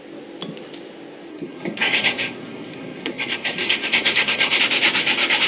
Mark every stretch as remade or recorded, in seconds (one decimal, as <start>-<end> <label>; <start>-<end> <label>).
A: 0.0-1.3 recorded; 1.3-4.6 remade; 4.6-5.5 recorded